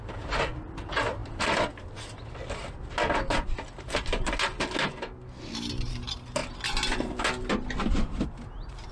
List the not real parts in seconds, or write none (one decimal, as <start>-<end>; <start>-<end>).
none